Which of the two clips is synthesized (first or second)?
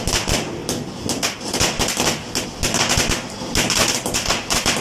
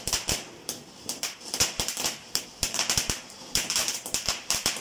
second